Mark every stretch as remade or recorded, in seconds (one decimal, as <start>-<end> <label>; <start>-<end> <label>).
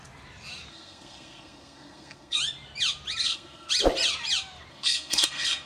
0.0-0.7 recorded; 0.7-2.4 remade; 2.4-3.2 recorded; 3.2-3.7 remade; 3.7-4.7 recorded; 4.7-5.7 remade